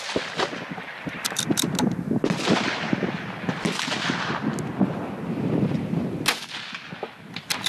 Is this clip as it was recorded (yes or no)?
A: yes